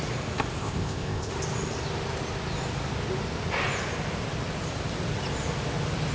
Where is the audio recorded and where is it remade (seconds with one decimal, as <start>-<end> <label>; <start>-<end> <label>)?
0.0-0.6 recorded; 0.6-1.3 remade; 1.3-6.1 recorded